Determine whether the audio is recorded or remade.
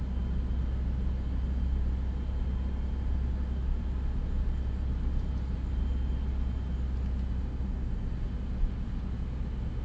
recorded